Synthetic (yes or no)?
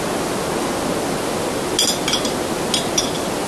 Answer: no